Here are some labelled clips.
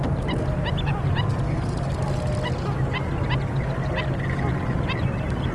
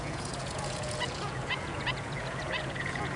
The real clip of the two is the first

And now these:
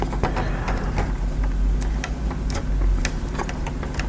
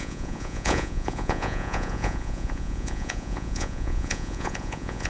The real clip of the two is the first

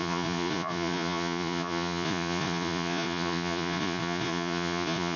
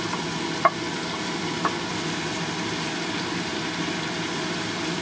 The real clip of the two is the second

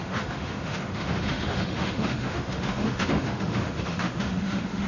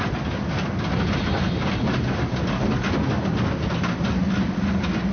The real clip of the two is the second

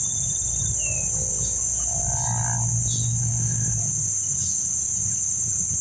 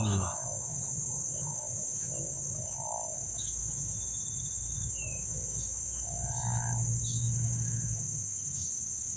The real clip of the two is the first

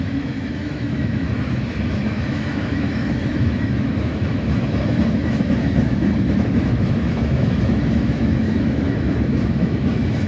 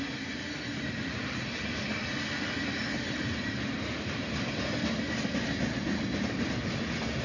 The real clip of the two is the second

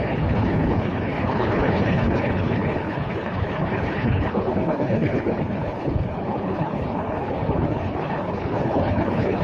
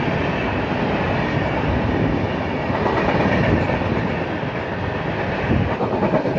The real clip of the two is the second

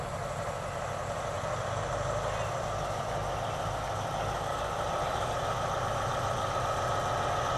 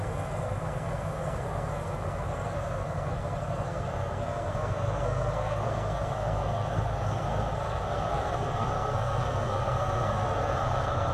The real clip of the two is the first